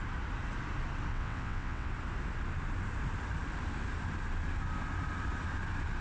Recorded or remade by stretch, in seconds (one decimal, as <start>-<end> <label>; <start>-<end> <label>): 0.0-1.1 recorded; 1.1-1.9 remade; 1.9-6.0 recorded